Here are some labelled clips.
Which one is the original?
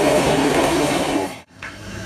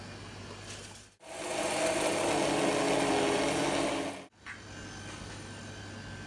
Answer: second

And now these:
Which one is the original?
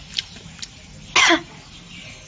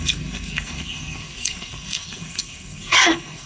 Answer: first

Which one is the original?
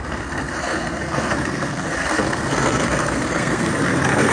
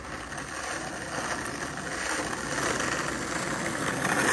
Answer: second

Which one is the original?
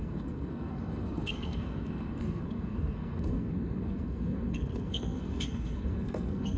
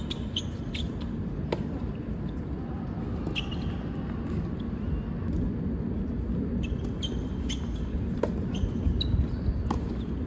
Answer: second